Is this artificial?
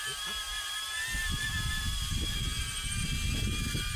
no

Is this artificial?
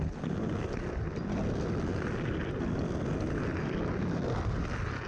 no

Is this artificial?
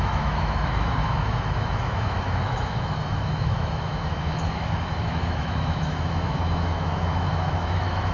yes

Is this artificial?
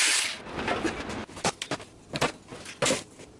no